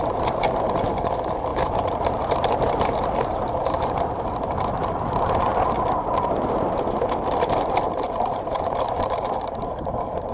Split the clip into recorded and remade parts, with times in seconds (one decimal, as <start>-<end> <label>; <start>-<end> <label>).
0.0-5.5 remade; 5.5-7.9 recorded; 7.9-10.3 remade